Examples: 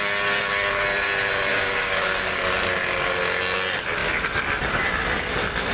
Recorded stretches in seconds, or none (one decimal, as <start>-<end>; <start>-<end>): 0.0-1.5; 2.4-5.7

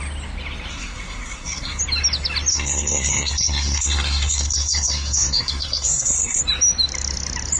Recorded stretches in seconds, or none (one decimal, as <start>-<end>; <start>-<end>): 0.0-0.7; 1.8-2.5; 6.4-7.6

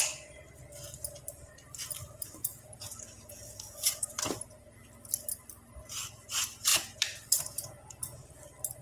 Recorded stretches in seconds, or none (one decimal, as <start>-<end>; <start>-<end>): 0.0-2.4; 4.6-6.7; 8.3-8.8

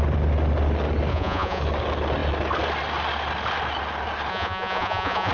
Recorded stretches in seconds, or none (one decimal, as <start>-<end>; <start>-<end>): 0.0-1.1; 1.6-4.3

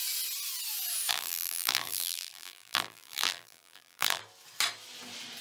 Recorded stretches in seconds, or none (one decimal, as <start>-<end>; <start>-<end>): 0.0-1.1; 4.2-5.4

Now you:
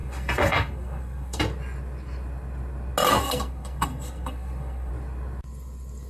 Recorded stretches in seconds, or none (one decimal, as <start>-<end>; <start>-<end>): 1.4-3.2; 4.9-6.1